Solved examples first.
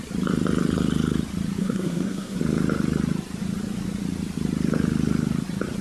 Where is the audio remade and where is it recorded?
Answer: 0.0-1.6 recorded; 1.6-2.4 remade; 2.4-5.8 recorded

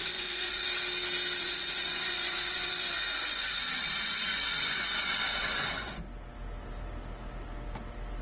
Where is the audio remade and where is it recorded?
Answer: 0.0-0.7 remade; 0.7-1.4 recorded; 1.4-6.0 remade; 6.0-8.2 recorded